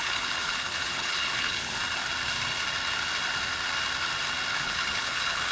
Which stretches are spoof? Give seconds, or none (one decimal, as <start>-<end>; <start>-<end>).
0.0-1.8; 4.5-5.5